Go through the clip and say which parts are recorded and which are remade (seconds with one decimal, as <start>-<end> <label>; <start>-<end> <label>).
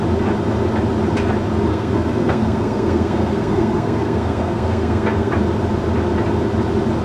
0.0-1.7 recorded; 1.7-5.3 remade; 5.3-7.0 recorded